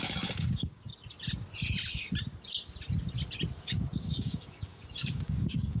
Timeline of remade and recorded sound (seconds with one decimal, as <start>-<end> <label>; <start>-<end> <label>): 0.0-0.9 remade; 0.9-3.6 recorded; 3.6-5.8 remade